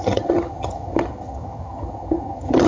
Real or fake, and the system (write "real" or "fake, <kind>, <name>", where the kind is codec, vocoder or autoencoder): fake, vocoder, HiFi-GAN